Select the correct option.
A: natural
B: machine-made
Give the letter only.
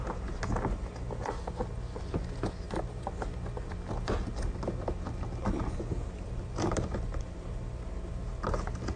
A